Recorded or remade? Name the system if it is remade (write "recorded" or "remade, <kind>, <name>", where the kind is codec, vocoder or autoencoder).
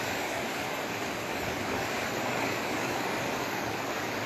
remade, codec, DAC